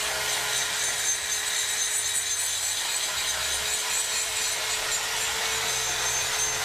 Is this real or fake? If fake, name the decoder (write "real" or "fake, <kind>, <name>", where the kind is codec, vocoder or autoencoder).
real